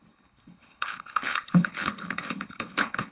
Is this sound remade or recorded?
remade